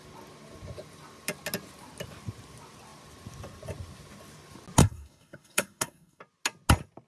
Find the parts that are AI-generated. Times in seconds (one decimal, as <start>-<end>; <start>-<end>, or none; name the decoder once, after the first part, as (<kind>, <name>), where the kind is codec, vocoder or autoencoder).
4.8-6.2 (codec, SNAC)

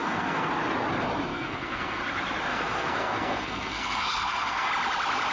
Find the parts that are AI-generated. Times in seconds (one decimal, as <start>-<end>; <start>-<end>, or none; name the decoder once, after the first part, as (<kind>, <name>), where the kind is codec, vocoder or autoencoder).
0.0-0.5 (codec, SNAC); 1.3-2.0; 2.5-4.7

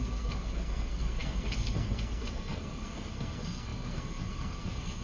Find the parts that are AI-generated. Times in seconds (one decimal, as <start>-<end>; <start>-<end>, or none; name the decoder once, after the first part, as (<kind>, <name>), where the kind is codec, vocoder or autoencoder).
0.0-5.0 (codec, SNAC)

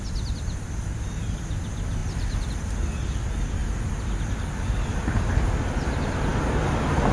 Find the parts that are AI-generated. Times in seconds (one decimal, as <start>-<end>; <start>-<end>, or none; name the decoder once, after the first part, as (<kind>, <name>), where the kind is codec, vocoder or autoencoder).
none

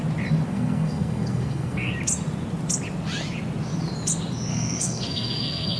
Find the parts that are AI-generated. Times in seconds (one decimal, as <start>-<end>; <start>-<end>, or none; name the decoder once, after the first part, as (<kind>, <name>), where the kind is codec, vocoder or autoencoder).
0.5-1.9 (codec, SNAC); 4.5-5.8